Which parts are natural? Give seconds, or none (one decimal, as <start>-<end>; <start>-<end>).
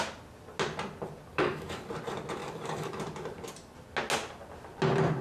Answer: 0.0-1.3; 1.9-2.4; 3.0-5.2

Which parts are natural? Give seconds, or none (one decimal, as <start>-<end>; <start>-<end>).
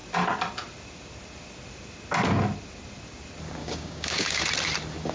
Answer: 0.0-3.6; 4.4-5.1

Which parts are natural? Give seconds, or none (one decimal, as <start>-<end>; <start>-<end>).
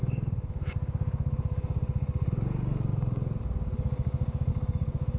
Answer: none